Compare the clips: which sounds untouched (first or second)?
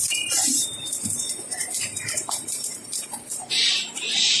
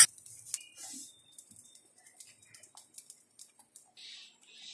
second